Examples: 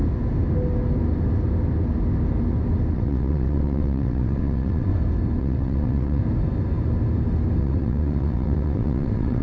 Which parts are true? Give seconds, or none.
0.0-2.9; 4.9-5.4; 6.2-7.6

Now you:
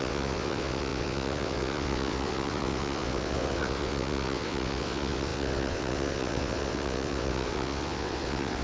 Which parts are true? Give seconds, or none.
none

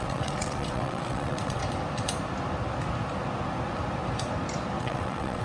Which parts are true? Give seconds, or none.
1.6-4.8

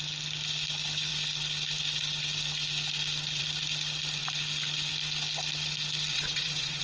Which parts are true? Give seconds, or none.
0.0-6.1

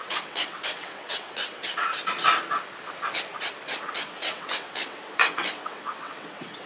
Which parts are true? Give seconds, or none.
1.9-3.8

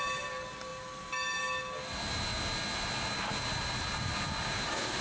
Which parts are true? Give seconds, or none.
0.0-5.0

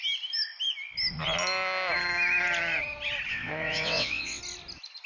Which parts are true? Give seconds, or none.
0.0-3.3; 4.4-5.1